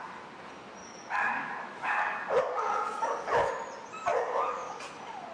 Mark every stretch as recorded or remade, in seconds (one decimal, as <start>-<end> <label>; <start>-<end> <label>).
0.0-0.8 recorded; 0.8-3.5 remade; 3.5-4.1 recorded; 4.1-4.8 remade; 4.8-5.3 recorded